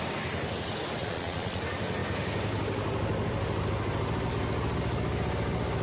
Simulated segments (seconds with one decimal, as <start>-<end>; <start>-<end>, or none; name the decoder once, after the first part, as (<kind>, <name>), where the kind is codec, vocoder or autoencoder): 1.0-1.6 (vocoder, Vocos)